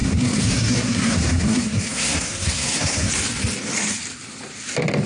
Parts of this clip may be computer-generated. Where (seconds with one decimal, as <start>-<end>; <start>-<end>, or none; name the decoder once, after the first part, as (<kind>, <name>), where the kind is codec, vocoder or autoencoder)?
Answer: 0.0-3.1 (codec, SNAC)